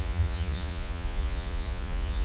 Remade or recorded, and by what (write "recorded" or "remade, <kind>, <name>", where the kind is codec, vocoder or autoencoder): remade, vocoder, Vocos